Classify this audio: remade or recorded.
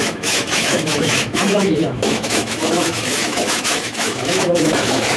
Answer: remade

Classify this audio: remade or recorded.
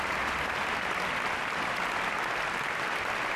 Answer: recorded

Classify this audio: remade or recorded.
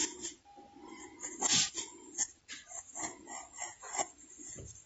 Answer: recorded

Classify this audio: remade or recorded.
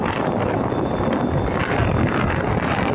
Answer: recorded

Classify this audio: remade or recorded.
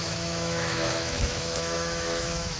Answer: remade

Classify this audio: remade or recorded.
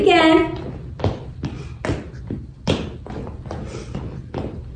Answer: recorded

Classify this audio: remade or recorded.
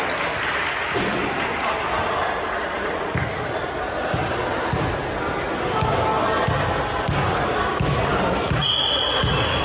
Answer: recorded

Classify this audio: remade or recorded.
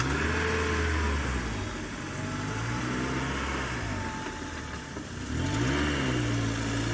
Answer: recorded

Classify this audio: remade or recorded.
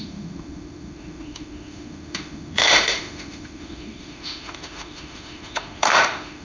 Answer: remade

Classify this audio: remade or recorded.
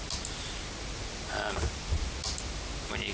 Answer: recorded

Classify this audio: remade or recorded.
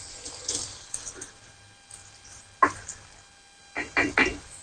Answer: recorded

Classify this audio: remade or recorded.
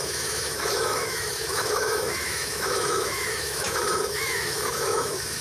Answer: remade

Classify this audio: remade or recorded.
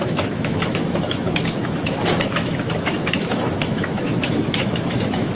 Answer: remade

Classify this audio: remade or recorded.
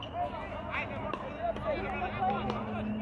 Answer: recorded